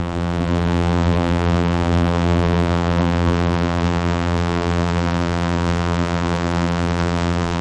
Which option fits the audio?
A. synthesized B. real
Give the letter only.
A